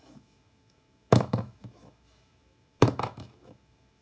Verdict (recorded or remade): remade